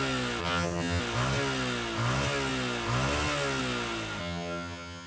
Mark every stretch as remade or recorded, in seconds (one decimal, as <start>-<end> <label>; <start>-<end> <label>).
0.0-0.4 recorded; 0.4-1.0 remade; 1.0-4.2 recorded; 4.2-5.1 remade